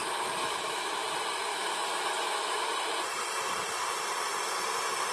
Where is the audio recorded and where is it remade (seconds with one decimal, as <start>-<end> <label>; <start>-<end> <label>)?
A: 0.0-1.0 remade; 1.0-1.5 recorded; 1.5-2.7 remade; 2.7-5.1 recorded